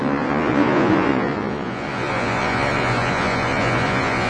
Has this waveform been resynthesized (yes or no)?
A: yes